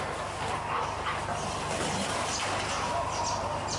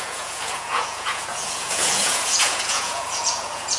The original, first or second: first